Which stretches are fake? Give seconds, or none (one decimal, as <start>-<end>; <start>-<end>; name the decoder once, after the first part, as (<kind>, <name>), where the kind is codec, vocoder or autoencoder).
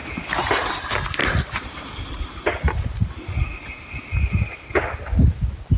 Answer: none